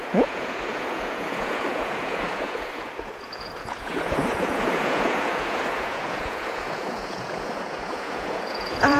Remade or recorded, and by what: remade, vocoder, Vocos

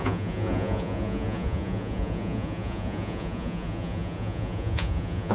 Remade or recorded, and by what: remade, vocoder, Vocos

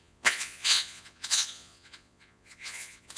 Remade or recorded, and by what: remade, vocoder, Vocos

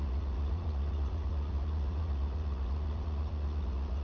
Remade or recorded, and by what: remade, vocoder, Vocos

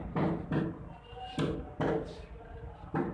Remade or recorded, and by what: recorded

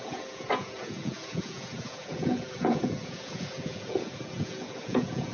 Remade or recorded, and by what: remade, vocoder, Vocos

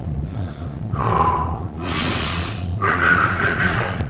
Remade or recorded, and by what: remade, vocoder, Vocos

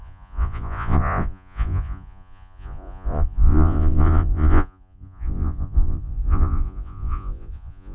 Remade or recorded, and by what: remade, vocoder, Vocos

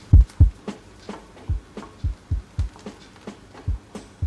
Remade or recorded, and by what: recorded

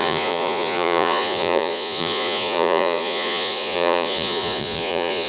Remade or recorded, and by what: remade, vocoder, Vocos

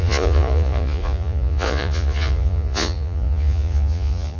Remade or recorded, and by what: remade, vocoder, Vocos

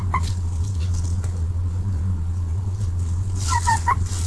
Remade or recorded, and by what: remade, vocoder, Vocos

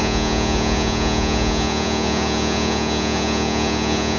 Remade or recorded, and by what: remade, vocoder, Vocos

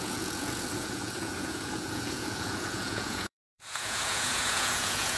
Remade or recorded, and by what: remade, vocoder, Vocos